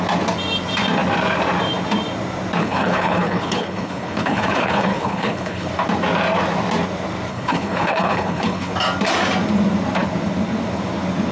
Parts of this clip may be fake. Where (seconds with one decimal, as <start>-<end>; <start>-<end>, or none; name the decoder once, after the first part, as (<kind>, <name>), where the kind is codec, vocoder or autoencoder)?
2.6-5.7 (codec, HILCodec); 7.3-8.7